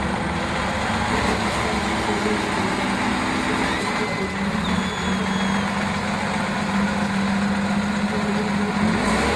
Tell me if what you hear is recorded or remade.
recorded